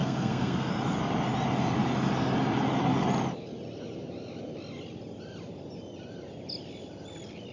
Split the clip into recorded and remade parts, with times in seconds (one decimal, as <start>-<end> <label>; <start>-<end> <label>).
0.0-0.7 remade; 0.7-7.5 recorded